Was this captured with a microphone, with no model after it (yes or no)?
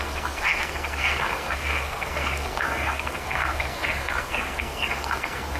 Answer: no